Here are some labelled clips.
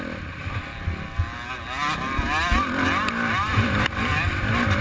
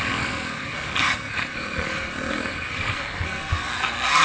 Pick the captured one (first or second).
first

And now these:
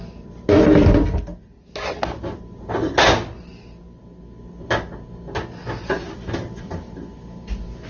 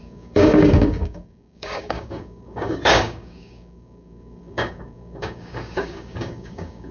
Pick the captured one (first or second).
first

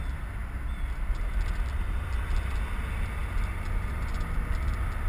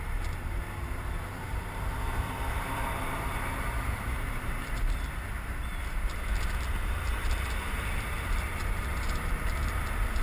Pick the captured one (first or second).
first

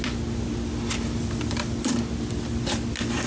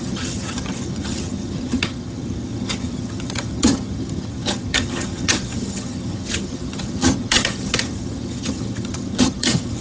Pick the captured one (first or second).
first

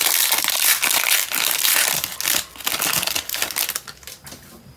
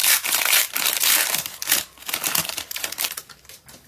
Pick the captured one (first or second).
first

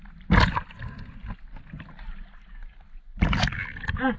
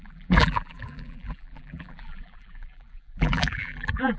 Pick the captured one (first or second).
first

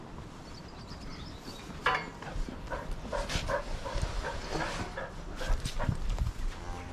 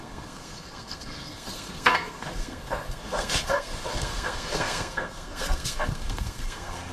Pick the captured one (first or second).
first